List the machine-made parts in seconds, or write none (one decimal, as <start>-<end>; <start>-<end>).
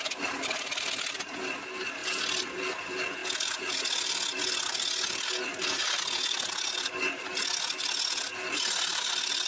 none